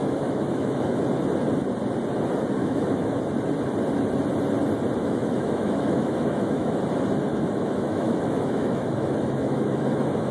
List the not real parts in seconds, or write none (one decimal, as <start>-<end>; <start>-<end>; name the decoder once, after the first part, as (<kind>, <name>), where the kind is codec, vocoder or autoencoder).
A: 0.0-1.0 (autoencoder, DAC-VAE); 2.6-3.2; 5.0-6.8; 7.3-10.3

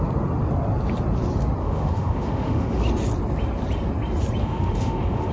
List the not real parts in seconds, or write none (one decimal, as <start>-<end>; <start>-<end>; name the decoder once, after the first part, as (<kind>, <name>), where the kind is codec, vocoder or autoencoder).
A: 1.6-2.8 (autoencoder, DAC-VAE); 4.4-5.3

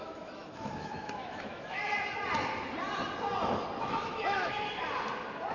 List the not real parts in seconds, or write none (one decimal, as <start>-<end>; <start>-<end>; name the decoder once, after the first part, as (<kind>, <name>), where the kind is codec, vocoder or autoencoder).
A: 0.0-1.8 (autoencoder, DAC-VAE); 3.8-4.8

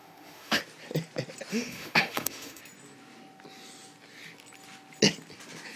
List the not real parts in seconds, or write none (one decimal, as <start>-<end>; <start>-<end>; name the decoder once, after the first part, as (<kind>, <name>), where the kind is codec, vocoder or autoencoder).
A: 0.0-0.6 (autoencoder, DAC-VAE); 1.5-2.6

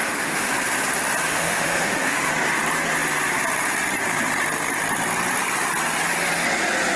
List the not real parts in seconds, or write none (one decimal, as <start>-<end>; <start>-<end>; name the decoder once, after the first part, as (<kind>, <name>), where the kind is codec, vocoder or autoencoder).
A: 0.0-0.5 (autoencoder, DAC-VAE); 1.3-2.3

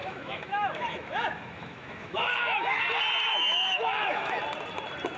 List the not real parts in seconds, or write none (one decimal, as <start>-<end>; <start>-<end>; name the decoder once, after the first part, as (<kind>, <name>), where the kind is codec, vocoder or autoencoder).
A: 0.0-2.8 (autoencoder, DAC-VAE); 3.3-4.4

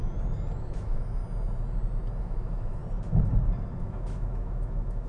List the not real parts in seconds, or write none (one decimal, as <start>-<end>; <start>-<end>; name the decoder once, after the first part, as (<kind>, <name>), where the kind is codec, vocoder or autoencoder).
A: 0.6-1.2 (autoencoder, DAC-VAE); 2.2-2.8; 3.8-5.1

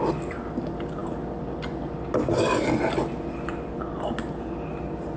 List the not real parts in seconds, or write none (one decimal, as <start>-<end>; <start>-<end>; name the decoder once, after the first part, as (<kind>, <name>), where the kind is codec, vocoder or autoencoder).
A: none